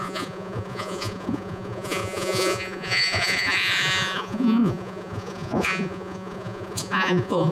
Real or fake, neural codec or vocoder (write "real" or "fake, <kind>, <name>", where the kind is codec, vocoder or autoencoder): fake, vocoder, Vocos